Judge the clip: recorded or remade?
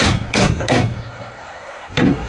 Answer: remade